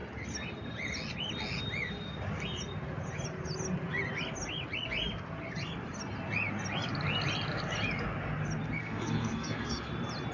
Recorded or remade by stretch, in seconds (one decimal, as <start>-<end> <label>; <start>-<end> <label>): 0.0-8.8 recorded; 8.8-9.9 remade; 9.9-10.3 recorded